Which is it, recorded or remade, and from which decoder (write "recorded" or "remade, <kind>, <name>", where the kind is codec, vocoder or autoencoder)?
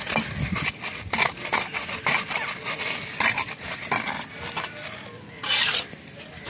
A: recorded